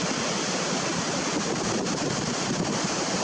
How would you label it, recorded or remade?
recorded